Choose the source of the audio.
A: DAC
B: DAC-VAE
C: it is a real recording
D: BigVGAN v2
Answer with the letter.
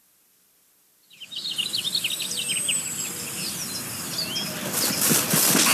C